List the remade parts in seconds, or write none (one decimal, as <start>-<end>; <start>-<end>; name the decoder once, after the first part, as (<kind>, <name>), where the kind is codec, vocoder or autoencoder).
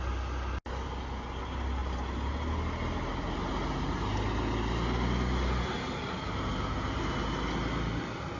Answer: none